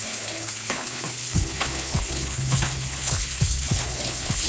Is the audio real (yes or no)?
no